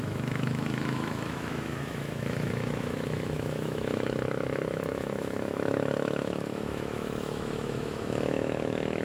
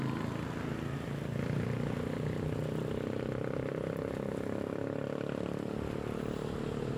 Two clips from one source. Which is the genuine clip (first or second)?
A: second